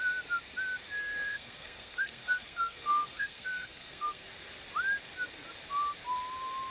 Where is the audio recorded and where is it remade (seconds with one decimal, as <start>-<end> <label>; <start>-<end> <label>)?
0.0-1.0 recorded; 1.0-4.3 remade; 4.3-6.7 recorded